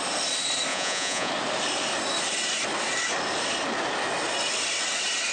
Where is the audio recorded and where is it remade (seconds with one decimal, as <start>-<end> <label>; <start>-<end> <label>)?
0.0-0.7 recorded; 0.7-1.3 remade; 1.3-5.3 recorded

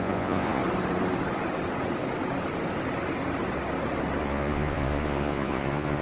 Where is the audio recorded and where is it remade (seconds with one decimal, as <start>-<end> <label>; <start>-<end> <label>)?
0.0-0.6 remade; 0.6-4.2 recorded; 4.2-6.0 remade